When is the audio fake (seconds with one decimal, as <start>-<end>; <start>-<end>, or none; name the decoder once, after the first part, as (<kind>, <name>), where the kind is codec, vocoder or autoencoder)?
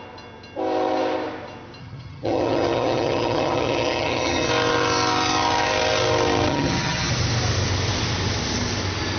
1.8-4.5 (vocoder, HiFi-GAN); 6.5-7.1